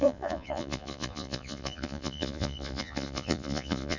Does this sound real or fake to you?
fake